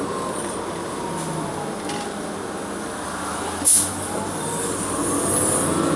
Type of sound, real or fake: real